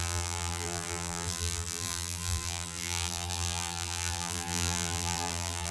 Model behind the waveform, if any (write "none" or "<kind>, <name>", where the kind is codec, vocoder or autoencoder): vocoder, BigVGAN v2